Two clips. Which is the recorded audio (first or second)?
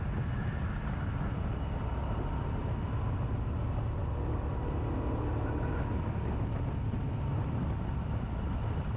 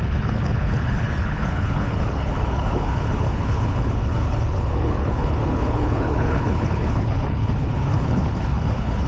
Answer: first